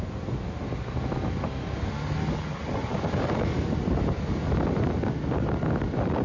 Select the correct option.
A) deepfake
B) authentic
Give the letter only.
B